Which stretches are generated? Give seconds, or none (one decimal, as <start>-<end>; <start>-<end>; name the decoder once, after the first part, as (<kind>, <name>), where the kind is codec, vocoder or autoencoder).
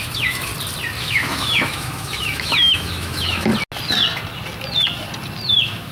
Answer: 0.0-0.5 (autoencoder, DAC-VAE); 1.0-3.5; 5.5-5.9